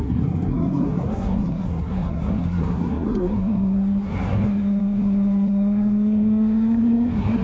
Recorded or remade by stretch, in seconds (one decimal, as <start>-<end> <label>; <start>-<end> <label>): 0.0-7.4 remade